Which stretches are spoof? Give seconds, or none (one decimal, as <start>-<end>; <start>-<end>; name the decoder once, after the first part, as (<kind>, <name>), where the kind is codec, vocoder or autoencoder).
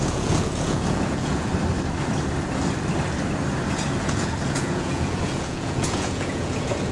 0.0-1.5 (vocoder, Vocos); 4.0-6.9